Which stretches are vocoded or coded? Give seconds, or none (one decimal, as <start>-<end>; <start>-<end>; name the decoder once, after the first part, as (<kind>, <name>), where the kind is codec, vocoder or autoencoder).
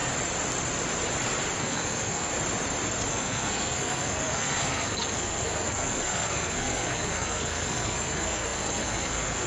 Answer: 1.6-2.3 (codec, SNAC); 3.1-9.5